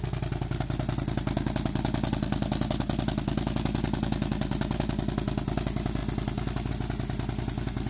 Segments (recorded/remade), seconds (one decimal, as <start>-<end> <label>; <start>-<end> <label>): 0.0-7.9 recorded